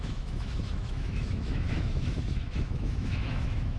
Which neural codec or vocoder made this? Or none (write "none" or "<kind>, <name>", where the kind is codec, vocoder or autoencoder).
autoencoder, DAC-VAE